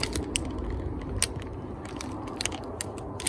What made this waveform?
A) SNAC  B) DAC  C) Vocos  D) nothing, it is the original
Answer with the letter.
D